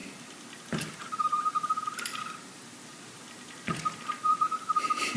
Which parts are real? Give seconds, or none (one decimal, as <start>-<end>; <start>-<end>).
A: 0.0-0.9